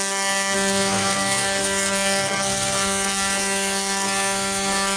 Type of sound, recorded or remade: remade